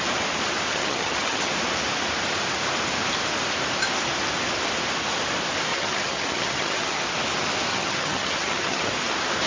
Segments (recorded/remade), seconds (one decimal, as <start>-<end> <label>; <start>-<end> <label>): 0.0-0.7 recorded; 0.7-1.5 remade; 1.5-5.7 recorded; 5.7-7.0 remade; 7.0-7.7 recorded; 7.7-8.9 remade; 8.9-9.5 recorded